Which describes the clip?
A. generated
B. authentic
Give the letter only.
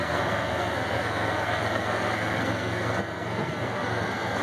A